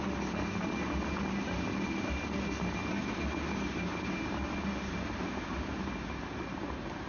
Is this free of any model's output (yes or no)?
yes